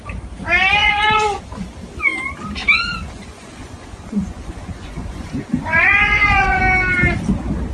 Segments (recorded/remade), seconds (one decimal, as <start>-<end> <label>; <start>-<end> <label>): 0.0-0.8 recorded; 0.8-1.4 remade; 1.4-2.6 recorded; 2.6-6.6 remade; 6.6-7.7 recorded